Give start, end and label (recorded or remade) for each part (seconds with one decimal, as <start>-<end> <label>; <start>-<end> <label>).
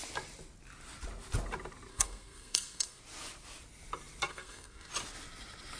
0.0-1.9 recorded; 1.9-3.0 remade; 3.0-4.3 recorded; 4.3-4.9 remade; 4.9-5.8 recorded